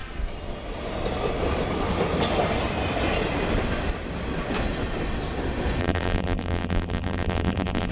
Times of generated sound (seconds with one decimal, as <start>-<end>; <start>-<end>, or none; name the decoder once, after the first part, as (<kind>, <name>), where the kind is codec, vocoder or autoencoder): 5.8-7.9 (vocoder, BigVGAN v2)